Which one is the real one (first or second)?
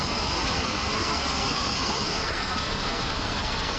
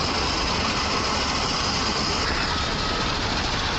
second